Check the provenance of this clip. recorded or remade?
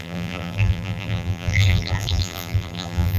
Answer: remade